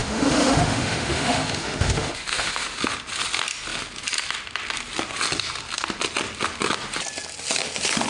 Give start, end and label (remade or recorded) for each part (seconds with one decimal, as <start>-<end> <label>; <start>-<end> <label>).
0.0-2.8 remade; 2.8-8.1 recorded

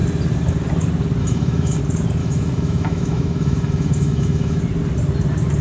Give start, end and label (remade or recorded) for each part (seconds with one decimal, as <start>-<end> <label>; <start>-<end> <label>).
0.0-1.2 recorded; 1.2-1.8 remade; 1.8-2.2 recorded; 2.2-4.6 remade; 4.6-5.6 recorded